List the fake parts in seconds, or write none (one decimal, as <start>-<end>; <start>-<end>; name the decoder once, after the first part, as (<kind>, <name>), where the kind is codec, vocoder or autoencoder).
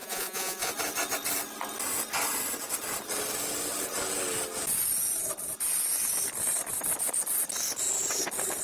0.0-0.7 (vocoder, Vocos)